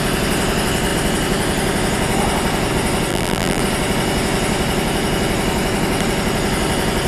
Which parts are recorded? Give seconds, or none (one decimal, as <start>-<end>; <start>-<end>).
0.0-3.1; 3.6-7.1

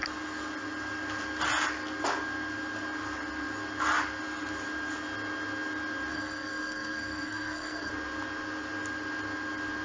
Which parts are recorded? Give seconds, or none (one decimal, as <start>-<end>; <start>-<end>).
0.0-6.1; 7.9-9.8

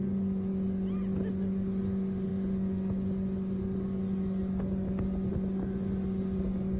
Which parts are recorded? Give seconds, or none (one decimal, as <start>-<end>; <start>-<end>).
0.0-6.8